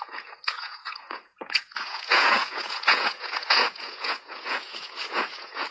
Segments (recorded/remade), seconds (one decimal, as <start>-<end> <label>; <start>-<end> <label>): 0.0-5.7 remade